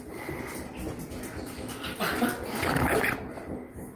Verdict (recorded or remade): recorded